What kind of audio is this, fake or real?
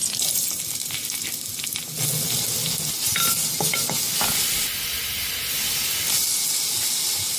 real